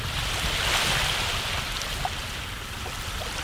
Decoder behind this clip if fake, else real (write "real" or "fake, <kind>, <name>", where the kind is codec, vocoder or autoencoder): real